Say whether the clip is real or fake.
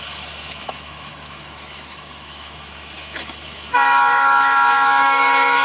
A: fake